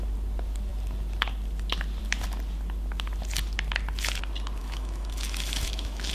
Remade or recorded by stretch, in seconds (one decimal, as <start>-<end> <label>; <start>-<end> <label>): 0.0-4.6 recorded; 4.6-6.1 remade